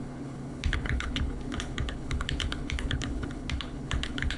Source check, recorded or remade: remade